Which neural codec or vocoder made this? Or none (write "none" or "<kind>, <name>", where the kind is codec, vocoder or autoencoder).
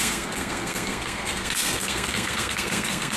codec, SNAC